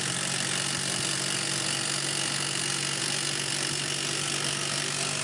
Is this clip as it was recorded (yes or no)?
yes